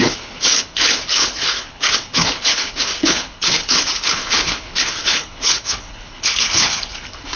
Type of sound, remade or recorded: remade